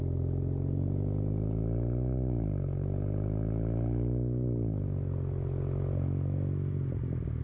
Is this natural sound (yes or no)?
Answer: yes